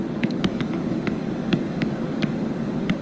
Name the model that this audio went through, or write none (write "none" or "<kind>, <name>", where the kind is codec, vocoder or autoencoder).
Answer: codec, DAC